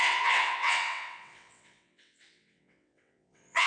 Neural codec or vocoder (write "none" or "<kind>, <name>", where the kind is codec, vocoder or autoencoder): vocoder, WaveNeXt